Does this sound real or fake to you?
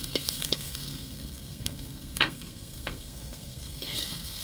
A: fake